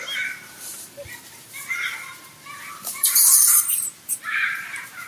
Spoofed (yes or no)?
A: yes